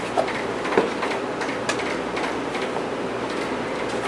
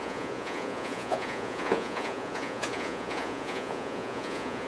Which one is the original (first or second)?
first